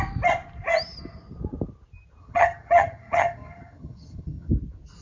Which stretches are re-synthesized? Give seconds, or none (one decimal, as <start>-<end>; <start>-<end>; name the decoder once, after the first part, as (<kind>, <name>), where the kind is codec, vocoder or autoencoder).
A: 2.2-4.5 (vocoder, HiFi-GAN)